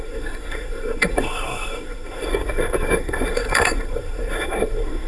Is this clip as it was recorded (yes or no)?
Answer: no